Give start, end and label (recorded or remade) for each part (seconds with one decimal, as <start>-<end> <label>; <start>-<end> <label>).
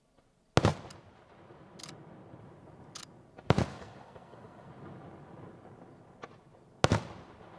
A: 0.0-3.7 recorded; 3.7-4.7 remade; 4.7-7.6 recorded